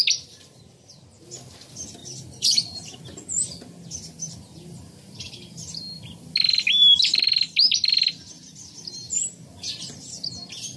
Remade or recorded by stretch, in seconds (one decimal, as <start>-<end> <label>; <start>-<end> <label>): 0.0-2.0 recorded; 2.0-3.0 remade; 3.0-10.8 recorded